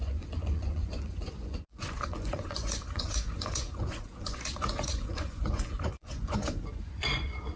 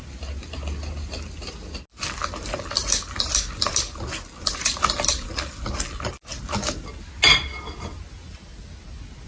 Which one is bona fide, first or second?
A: second